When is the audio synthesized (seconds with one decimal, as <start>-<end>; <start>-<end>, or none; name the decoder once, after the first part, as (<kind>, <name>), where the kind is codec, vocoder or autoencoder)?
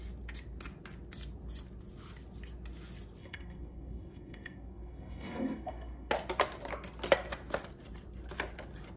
3.2-6.1 (codec, SNAC)